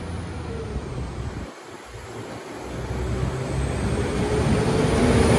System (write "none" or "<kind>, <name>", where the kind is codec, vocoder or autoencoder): none